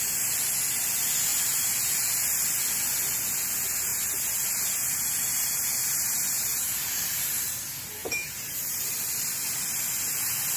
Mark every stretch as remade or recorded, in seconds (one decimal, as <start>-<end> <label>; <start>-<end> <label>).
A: 0.0-1.3 recorded; 1.3-2.0 remade; 2.0-3.9 recorded; 3.9-7.6 remade; 7.6-8.0 recorded; 8.0-8.9 remade; 8.9-10.6 recorded